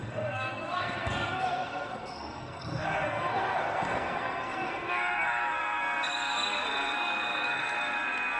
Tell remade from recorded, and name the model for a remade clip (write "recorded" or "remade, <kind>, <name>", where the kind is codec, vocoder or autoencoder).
remade, codec, SNAC